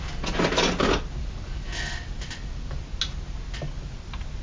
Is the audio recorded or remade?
recorded